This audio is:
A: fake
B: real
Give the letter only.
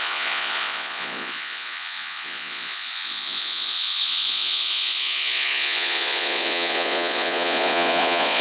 A